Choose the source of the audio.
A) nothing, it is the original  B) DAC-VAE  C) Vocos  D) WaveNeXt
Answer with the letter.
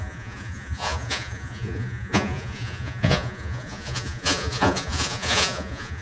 C